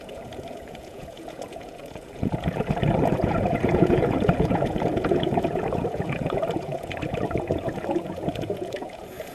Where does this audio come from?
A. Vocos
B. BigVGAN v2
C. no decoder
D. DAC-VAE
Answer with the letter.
A